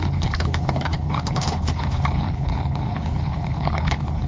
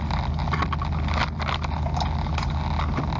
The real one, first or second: second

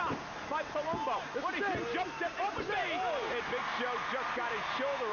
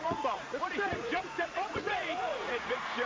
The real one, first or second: first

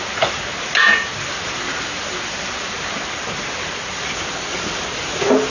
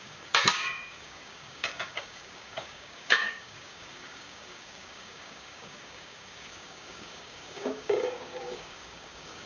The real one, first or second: first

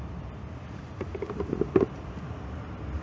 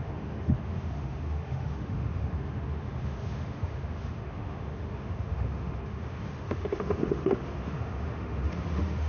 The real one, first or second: first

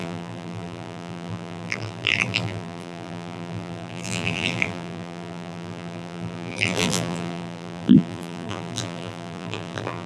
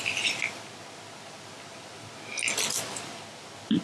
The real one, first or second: second